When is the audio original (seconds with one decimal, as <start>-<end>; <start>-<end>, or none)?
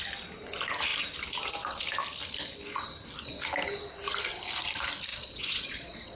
0.0-5.1